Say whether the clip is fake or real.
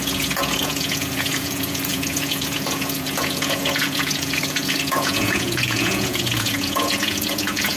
fake